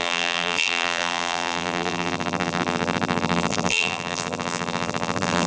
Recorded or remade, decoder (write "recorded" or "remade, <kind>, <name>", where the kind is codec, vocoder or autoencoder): remade, vocoder, BigVGAN v2